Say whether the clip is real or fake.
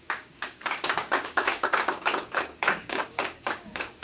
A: fake